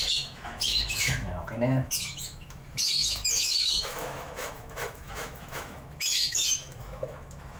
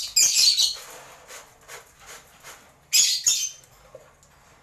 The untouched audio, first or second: second